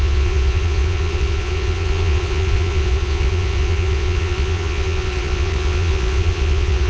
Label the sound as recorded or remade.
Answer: remade